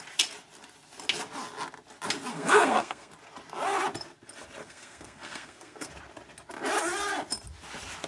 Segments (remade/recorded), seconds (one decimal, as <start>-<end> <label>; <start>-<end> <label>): 0.0-2.3 recorded; 2.3-3.1 remade; 3.1-4.6 recorded; 4.6-5.9 remade; 5.9-8.1 recorded